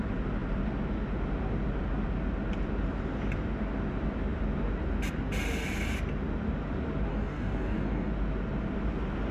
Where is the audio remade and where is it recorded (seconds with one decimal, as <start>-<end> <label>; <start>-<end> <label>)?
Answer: 0.0-7.1 recorded; 7.1-8.1 remade; 8.1-9.3 recorded